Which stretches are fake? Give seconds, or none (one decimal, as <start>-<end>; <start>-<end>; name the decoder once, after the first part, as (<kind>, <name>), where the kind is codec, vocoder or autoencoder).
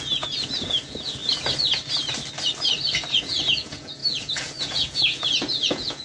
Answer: 0.0-1.2 (vocoder, Vocos); 3.2-6.0